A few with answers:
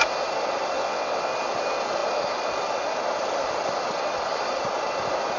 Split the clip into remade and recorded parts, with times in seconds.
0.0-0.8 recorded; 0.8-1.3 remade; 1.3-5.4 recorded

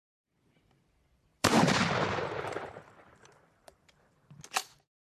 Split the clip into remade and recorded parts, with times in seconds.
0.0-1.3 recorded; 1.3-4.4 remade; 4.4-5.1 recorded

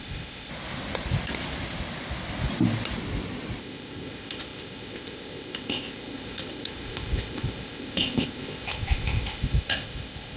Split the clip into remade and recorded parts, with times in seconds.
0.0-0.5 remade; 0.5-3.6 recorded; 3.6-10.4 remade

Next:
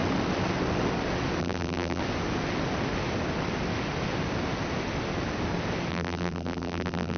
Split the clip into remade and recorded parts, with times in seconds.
0.0-1.4 recorded; 1.4-2.0 remade; 2.0-5.9 recorded; 5.9-7.2 remade

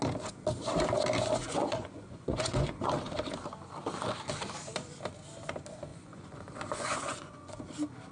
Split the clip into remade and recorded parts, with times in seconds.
0.0-1.4 recorded; 1.4-2.9 remade; 2.9-5.9 recorded; 5.9-7.6 remade; 7.6-8.1 recorded

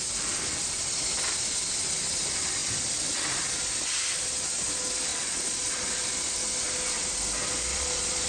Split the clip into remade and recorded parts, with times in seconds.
0.0-5.1 recorded; 5.1-5.9 remade; 5.9-7.7 recorded; 7.7-8.3 remade